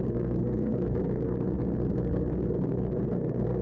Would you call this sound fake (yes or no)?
yes